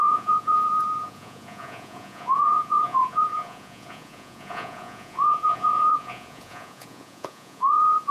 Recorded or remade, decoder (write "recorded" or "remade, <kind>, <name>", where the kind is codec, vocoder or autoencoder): remade, vocoder, Vocos